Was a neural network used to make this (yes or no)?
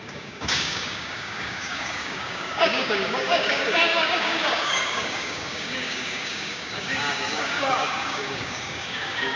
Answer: yes